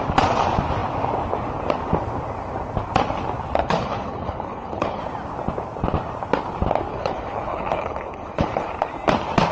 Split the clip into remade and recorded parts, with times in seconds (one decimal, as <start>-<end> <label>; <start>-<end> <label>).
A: 0.0-3.6 recorded; 3.6-5.0 remade; 5.0-6.9 recorded; 6.9-8.7 remade; 8.7-9.5 recorded